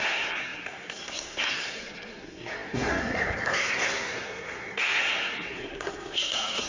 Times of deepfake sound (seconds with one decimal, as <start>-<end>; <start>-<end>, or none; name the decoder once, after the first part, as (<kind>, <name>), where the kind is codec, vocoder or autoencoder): 0.0-6.7 (codec, SNAC)